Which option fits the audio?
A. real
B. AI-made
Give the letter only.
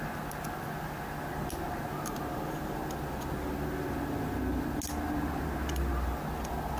A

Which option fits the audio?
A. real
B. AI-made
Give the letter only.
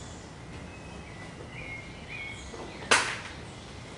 A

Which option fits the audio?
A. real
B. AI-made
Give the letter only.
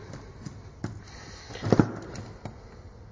A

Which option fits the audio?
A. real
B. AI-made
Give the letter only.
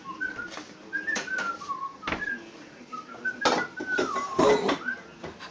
A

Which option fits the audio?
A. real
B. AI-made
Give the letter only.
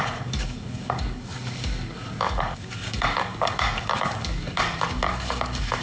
B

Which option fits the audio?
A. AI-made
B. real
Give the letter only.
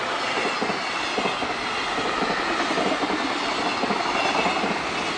B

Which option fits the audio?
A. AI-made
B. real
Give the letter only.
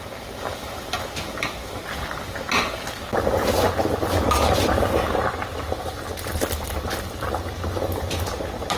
B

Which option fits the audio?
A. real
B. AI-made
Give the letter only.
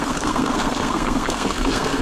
B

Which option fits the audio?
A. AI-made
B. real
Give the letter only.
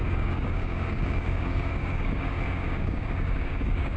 A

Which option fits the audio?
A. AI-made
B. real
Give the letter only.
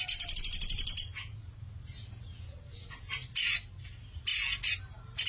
B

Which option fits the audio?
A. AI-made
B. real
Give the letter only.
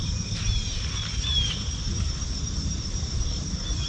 B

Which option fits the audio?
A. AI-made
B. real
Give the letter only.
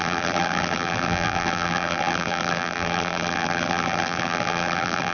A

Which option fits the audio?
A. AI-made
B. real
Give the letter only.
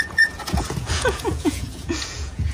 A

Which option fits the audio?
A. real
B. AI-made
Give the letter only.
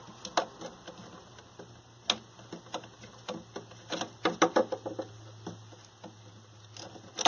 A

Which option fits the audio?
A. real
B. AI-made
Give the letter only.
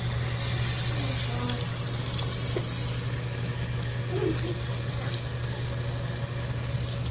A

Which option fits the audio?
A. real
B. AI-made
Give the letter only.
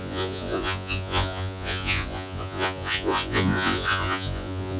B